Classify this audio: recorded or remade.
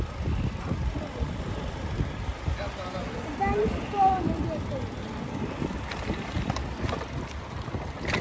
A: recorded